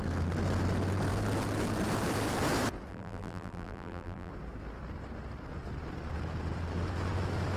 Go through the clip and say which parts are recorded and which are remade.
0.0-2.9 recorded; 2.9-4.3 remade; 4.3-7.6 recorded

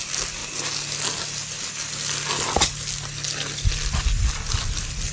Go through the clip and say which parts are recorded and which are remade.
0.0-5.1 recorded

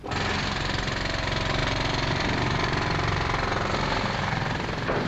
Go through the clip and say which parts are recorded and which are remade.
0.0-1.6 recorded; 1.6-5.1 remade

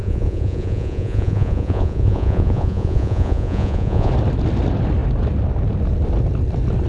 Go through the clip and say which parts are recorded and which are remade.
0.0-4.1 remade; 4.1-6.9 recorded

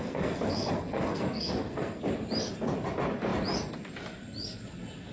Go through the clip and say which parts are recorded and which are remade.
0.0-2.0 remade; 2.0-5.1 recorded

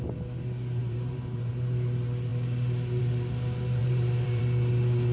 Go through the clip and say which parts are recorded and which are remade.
0.0-0.8 recorded; 0.8-1.5 remade; 1.5-3.8 recorded; 3.8-4.4 remade; 4.4-5.1 recorded

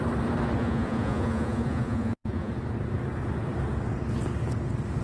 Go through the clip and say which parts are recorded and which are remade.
0.0-0.6 recorded; 0.6-2.5 remade; 2.5-5.0 recorded